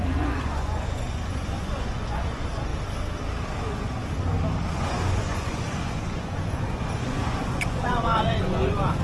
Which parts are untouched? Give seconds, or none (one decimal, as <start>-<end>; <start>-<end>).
2.7-3.6; 4.0-4.7